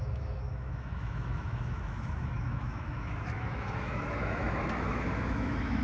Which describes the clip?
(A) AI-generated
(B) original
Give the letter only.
A